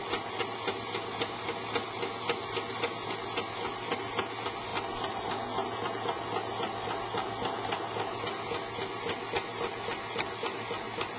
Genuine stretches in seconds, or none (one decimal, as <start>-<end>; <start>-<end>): 0.0-11.2